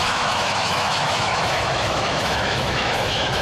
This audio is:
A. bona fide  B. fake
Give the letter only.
B